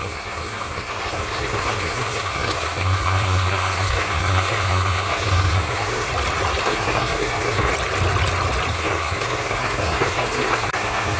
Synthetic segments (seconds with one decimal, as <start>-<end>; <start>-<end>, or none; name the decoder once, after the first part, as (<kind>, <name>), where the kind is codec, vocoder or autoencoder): 0.0-6.1 (codec, SNAC); 6.6-7.7; 8.7-11.2